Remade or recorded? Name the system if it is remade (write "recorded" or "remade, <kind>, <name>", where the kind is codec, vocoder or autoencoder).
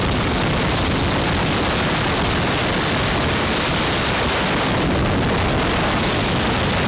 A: recorded